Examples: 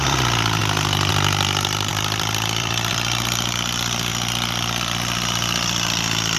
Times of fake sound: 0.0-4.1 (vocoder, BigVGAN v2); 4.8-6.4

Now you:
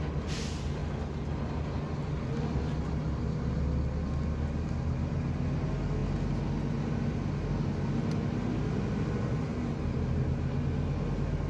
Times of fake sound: none

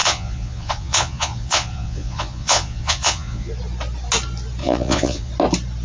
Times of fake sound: 0.0-3.5 (vocoder, Vocos); 4.6-5.3

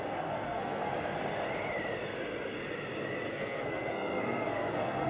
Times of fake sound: 0.0-0.9 (codec, SNAC); 3.3-5.1

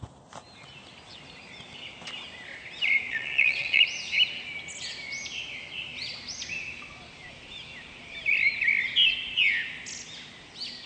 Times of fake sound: 3.1-3.8 (vocoder, WaveNeXt)

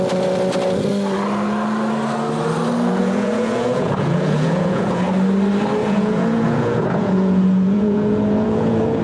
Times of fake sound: 3.0-5.0 (vocoder, Vocos); 5.8-9.0

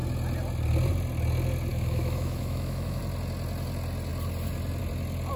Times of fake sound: 1.7-3.0 (autoencoder, DAC-VAE)